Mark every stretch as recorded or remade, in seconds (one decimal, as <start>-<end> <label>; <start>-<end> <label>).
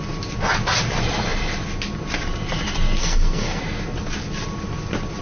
0.0-3.0 recorded; 3.0-3.6 remade; 3.6-5.2 recorded